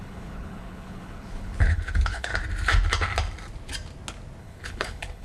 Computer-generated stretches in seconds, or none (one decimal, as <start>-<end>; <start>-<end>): 0.0-2.3; 4.4-5.2